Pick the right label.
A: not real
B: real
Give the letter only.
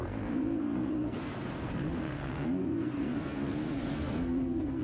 A